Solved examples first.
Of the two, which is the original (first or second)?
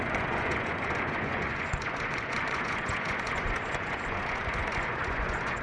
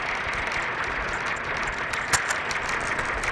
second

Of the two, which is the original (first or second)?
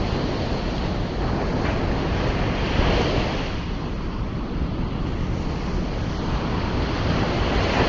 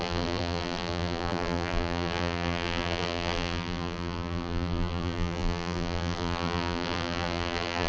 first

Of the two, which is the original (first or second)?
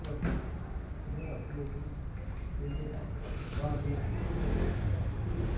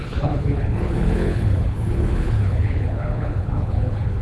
first